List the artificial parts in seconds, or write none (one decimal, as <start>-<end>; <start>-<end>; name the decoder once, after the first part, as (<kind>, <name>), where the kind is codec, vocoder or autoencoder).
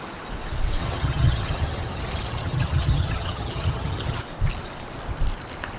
0.8-4.2 (vocoder, HiFi-GAN)